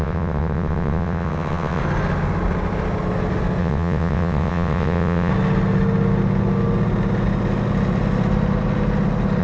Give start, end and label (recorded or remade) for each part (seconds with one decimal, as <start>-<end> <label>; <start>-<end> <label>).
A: 0.0-1.8 remade; 1.8-3.6 recorded; 3.6-5.3 remade; 5.3-9.4 recorded